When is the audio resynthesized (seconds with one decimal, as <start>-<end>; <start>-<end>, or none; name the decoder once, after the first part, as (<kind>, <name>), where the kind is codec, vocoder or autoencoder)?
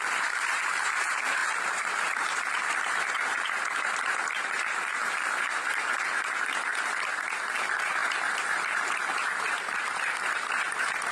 1.4-5.8 (vocoder, BigVGAN v2); 8.0-10.5